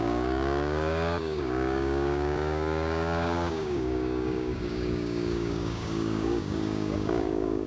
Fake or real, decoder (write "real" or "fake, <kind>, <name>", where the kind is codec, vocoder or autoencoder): fake, codec, DAC